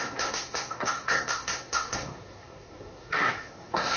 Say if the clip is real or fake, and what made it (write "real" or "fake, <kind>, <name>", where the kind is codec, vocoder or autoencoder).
fake, codec, SNAC